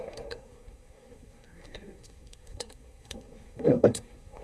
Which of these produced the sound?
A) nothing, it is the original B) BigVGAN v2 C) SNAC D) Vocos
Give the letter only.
C